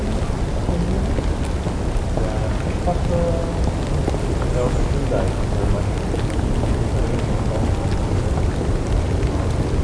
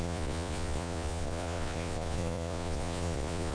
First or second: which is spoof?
second